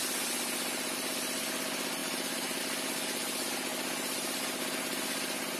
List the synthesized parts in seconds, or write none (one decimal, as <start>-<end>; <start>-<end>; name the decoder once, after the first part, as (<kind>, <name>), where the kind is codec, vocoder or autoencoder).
2.0-2.6 (vocoder, BigVGAN v2)